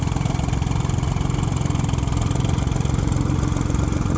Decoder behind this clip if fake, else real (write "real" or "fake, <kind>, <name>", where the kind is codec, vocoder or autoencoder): real